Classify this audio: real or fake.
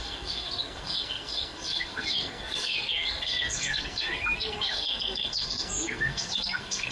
fake